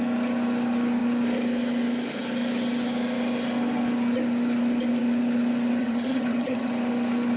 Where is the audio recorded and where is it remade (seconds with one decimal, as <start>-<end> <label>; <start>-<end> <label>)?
0.0-5.8 recorded; 5.8-6.7 remade; 6.7-7.4 recorded